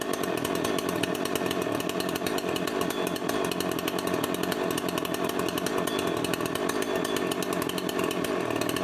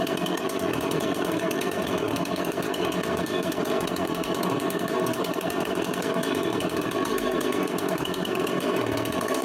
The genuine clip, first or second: first